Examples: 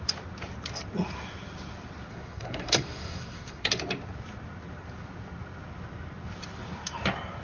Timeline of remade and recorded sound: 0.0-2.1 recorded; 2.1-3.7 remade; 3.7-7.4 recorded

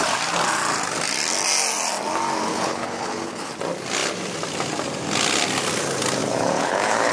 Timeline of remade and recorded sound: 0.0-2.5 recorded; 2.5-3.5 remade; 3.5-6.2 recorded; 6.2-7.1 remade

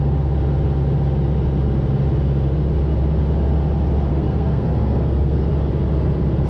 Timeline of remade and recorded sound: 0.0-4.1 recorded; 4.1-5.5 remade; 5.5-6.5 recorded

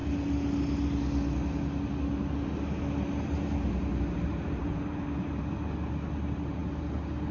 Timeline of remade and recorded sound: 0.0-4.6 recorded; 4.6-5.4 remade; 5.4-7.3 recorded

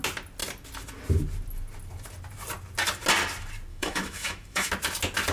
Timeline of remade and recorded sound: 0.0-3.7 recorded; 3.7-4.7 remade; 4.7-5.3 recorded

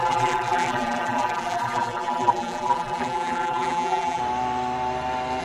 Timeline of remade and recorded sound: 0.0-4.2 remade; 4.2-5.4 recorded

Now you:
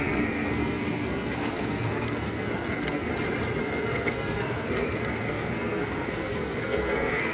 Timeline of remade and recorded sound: 0.0-3.1 remade; 3.1-3.6 recorded; 3.6-7.3 remade